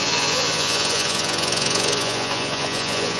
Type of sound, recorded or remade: remade